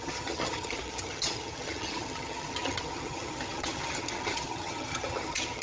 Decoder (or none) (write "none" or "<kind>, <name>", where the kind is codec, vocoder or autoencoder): vocoder, HiFi-GAN